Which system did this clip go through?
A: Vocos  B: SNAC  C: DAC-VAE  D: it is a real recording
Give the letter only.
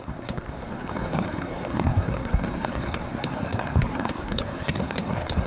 B